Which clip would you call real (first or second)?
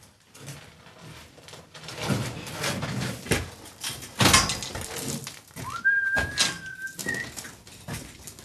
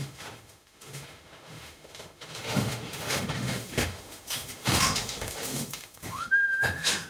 first